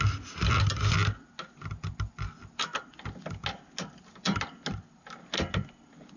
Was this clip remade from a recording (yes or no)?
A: no